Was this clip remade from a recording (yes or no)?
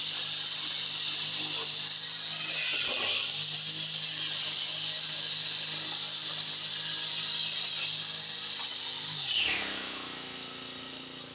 no